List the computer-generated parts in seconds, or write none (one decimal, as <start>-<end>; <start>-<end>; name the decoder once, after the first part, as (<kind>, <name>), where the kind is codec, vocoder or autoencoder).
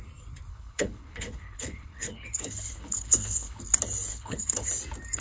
0.5-3.6 (codec, HILCodec); 4.1-4.7